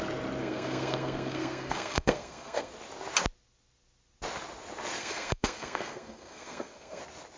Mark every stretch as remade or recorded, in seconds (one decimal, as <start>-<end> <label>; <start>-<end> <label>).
0.0-0.4 recorded; 0.4-2.7 remade; 2.7-5.0 recorded; 5.0-7.0 remade; 7.0-7.4 recorded